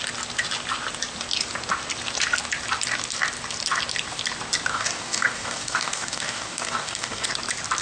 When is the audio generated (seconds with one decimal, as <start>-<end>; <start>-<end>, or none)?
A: 4.7-7.3